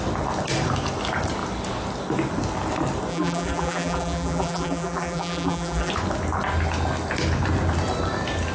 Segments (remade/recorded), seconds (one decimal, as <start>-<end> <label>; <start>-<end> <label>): 0.0-3.1 recorded; 3.1-5.9 remade; 5.9-8.5 recorded